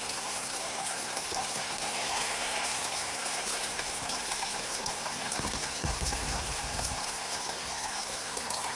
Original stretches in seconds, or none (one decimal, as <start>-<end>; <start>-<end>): none